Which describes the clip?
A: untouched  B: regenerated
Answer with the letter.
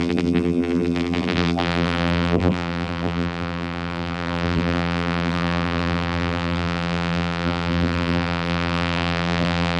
B